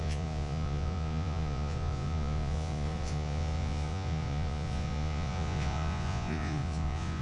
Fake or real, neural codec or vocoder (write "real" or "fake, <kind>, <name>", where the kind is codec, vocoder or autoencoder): fake, vocoder, Vocos